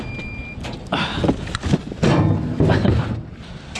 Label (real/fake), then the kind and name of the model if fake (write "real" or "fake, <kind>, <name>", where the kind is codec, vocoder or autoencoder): real